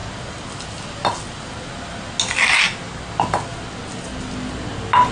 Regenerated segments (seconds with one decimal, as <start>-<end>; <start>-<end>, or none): none